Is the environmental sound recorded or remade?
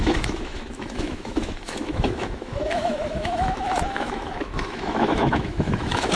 remade